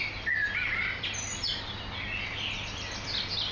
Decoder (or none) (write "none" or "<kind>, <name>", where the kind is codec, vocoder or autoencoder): none